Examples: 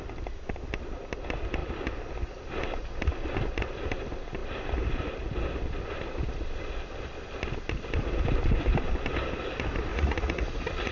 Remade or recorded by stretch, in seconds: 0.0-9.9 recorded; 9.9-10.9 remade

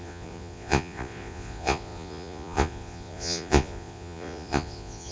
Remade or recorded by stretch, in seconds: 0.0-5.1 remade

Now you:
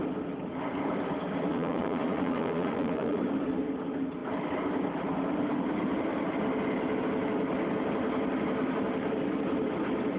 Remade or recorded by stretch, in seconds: 0.0-1.5 recorded; 1.5-3.2 remade; 3.2-10.2 recorded